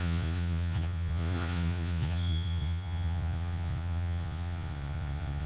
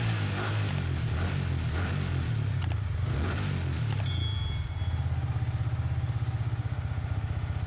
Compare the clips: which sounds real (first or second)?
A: second